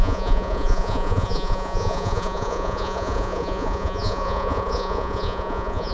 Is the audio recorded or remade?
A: remade